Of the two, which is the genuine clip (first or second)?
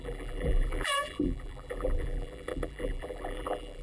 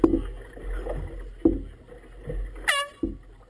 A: second